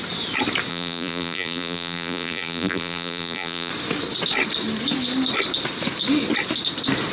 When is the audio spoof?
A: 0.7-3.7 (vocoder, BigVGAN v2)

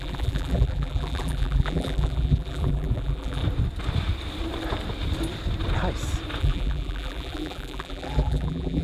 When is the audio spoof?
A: 0.0-3.4 (vocoder, BigVGAN v2); 6.4-8.8

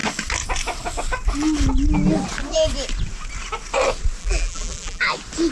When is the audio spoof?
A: 4.2-5.0 (vocoder, BigVGAN v2)

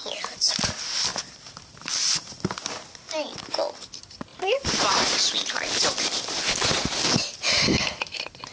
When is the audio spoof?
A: 1.1-2.4 (vocoder, BigVGAN v2); 4.3-6.4

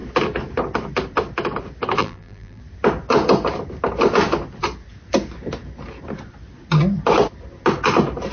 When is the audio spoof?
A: 2.0-2.6 (vocoder, BigVGAN v2)